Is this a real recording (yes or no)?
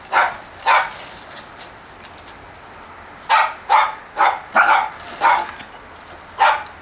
yes